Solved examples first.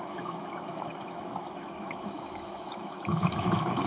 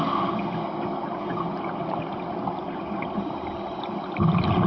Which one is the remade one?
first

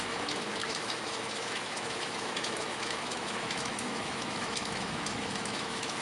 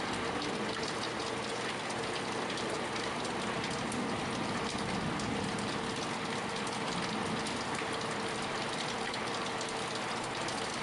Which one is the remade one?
first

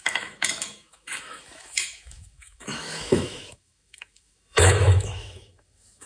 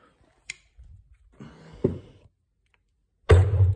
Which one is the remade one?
first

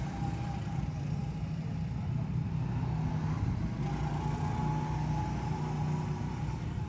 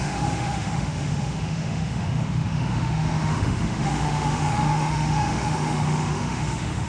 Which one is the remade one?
second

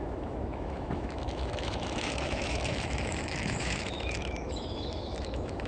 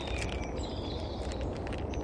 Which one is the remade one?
first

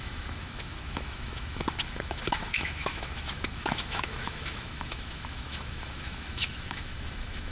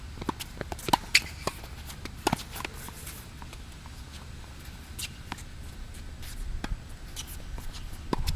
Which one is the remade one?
first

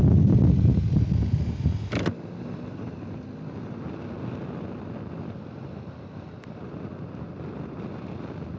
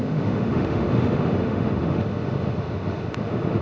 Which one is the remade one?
second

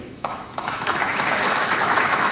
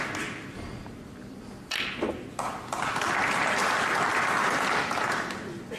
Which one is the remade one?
first